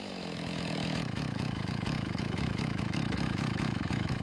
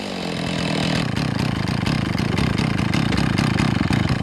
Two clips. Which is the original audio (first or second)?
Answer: second